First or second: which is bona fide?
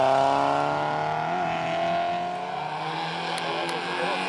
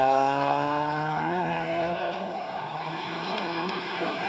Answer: first